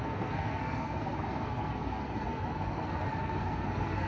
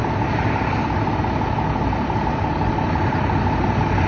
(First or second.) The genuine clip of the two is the second